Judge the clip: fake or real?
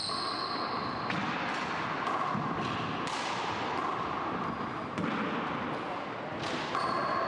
real